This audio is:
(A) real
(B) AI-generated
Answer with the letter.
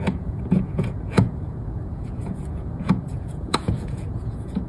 B